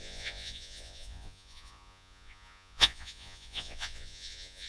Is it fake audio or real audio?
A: fake